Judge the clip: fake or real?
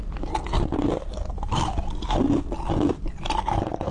fake